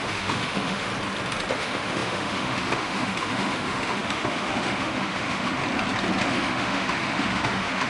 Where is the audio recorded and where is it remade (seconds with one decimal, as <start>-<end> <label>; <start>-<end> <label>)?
0.0-0.9 remade; 0.9-1.5 recorded; 1.5-5.6 remade; 5.6-6.2 recorded; 6.2-7.9 remade